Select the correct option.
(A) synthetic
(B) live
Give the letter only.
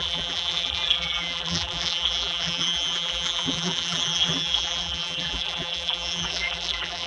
A